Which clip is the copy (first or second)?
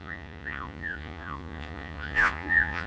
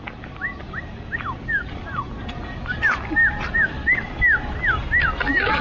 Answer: first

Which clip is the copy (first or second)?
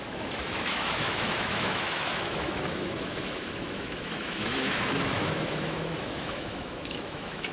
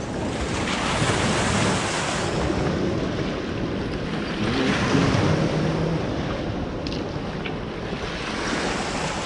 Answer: first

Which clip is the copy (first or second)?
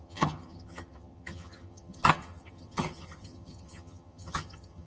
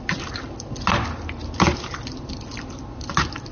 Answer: first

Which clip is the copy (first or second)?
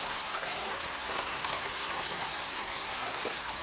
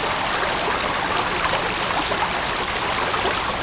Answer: first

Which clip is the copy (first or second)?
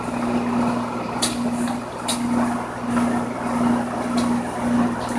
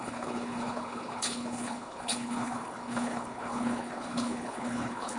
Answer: second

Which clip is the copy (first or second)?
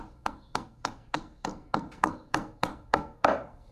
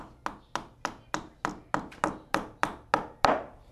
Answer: first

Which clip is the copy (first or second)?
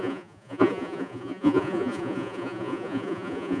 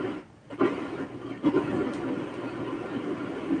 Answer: first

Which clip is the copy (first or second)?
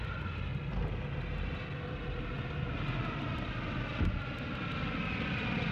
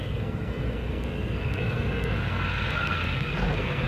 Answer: second